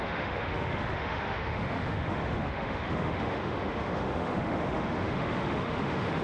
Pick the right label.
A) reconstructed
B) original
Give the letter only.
A